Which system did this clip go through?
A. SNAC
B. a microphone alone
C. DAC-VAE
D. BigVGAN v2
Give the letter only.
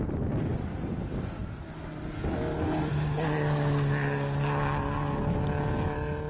B